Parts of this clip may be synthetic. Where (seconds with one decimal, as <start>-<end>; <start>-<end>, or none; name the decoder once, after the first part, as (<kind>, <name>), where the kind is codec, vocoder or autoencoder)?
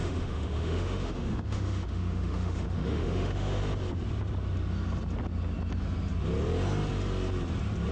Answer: 0.0-3.6 (autoencoder, DAC-VAE)